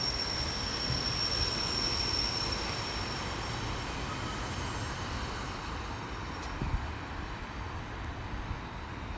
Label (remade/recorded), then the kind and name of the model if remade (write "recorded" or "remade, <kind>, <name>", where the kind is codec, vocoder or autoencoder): recorded